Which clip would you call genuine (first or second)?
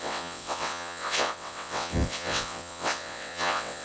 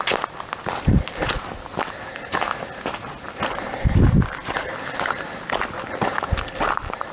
second